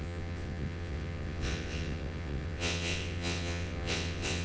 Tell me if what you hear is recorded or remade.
remade